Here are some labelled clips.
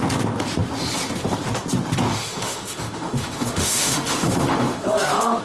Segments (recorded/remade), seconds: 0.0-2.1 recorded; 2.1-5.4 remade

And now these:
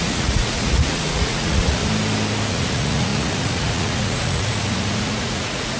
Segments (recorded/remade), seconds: 0.0-1.8 remade; 1.8-2.5 recorded; 2.5-5.8 remade